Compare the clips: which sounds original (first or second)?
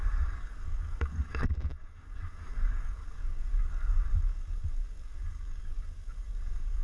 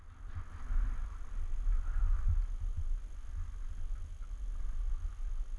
second